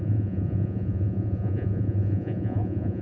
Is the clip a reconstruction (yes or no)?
yes